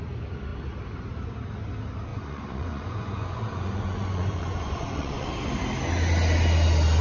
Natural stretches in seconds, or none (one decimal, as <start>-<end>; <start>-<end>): 0.0-2.1; 5.3-7.0